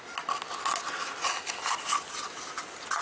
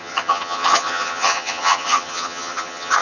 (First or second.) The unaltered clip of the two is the first